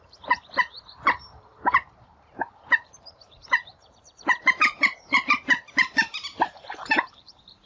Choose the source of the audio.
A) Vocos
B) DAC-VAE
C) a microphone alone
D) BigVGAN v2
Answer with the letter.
D